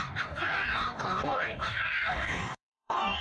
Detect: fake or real fake